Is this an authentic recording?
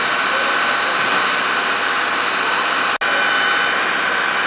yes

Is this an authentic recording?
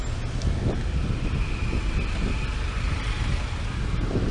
yes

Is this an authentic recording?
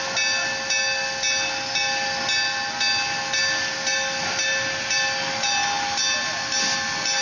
yes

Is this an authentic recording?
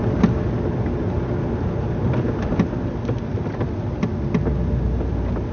yes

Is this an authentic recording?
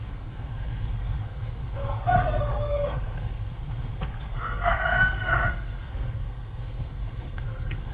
no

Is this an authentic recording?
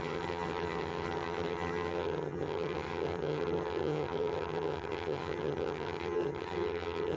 no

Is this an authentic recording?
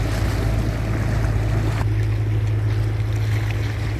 yes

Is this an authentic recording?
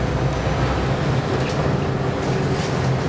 yes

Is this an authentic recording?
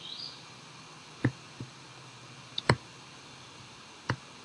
yes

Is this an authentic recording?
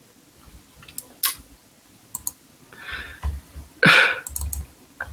yes